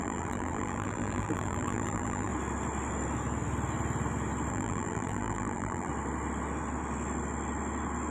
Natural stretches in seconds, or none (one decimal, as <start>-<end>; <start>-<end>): 2.3-4.5; 5.9-8.1